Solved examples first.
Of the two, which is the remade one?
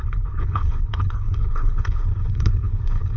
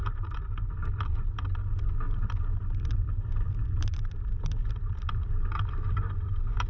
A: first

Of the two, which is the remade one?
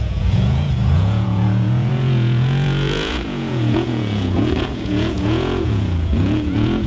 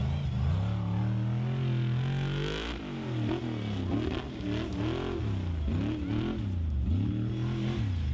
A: first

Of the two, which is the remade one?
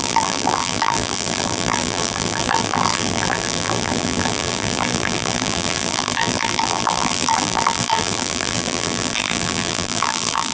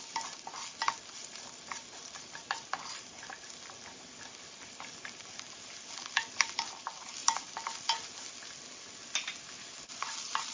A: first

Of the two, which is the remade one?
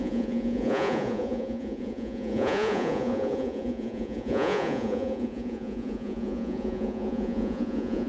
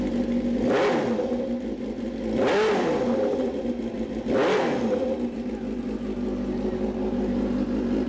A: first